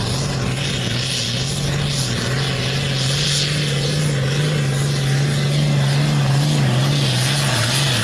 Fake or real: real